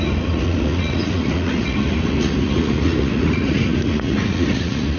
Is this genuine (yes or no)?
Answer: no